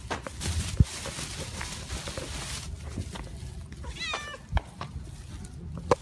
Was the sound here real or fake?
real